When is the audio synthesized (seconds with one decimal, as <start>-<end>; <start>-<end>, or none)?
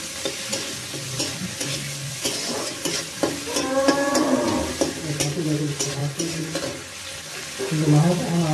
0.5-3.0; 6.0-6.6